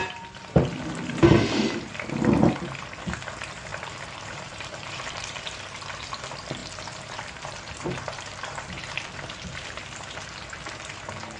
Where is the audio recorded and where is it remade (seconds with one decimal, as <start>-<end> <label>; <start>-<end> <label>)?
0.0-0.6 remade; 0.6-3.7 recorded; 3.7-5.6 remade; 5.6-6.6 recorded; 6.6-9.7 remade; 9.7-11.4 recorded